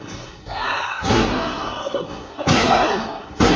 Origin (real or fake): fake